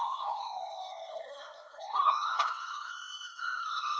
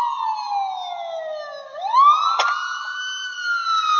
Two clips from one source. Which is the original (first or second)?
second